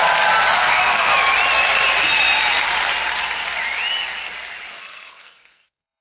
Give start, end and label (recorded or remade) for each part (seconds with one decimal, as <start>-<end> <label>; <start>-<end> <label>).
0.0-0.6 recorded; 0.6-1.1 remade; 1.1-4.7 recorded; 4.7-6.0 remade